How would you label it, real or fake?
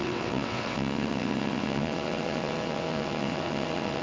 fake